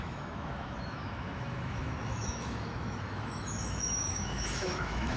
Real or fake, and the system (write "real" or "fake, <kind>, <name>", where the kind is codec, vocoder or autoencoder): fake, autoencoder, DAC-VAE